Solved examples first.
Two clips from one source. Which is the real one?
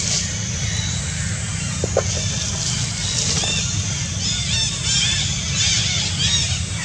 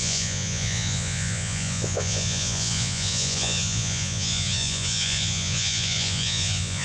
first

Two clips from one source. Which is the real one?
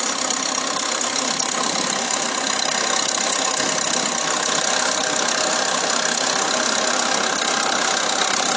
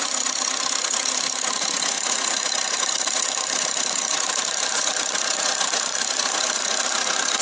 first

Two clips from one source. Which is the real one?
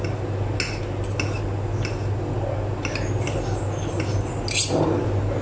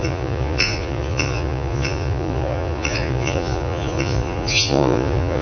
first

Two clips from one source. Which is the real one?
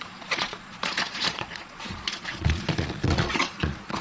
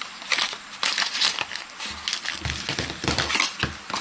second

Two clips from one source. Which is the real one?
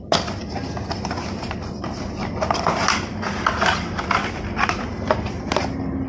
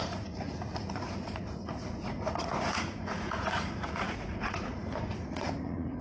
first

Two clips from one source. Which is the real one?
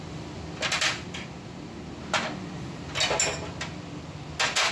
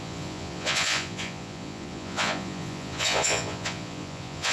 first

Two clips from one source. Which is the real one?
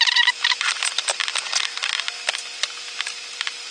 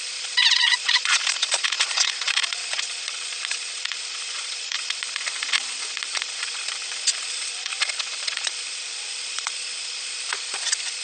first